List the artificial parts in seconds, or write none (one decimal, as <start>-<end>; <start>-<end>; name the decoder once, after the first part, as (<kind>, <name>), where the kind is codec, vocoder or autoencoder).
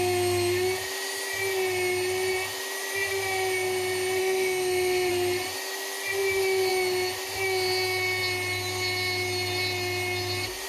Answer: 4.2-5.1 (autoencoder, DAC-VAE)